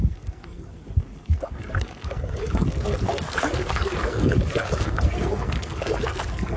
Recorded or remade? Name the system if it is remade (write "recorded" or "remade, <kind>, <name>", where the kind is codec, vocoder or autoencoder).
remade, codec, SNAC